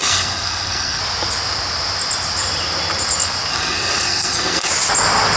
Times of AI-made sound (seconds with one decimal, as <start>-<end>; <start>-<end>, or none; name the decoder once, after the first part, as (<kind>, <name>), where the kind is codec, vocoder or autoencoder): 0.0-1.0 (codec, SNAC); 3.5-4.7